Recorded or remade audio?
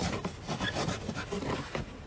recorded